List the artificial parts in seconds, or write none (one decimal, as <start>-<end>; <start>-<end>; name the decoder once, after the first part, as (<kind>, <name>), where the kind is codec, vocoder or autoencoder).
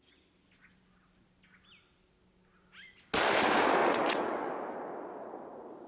3.8-4.5 (vocoder, WaveNeXt)